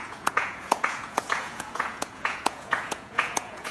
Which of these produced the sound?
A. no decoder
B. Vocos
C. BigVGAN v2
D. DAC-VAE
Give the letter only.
B